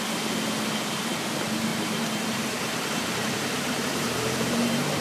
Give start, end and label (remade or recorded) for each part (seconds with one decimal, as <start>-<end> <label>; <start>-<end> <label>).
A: 0.0-1.7 recorded; 1.7-5.0 remade